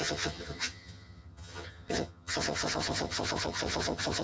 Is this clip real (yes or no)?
no